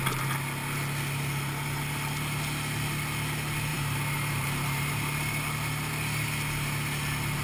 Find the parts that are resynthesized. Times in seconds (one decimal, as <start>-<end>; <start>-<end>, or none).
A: 3.7-4.9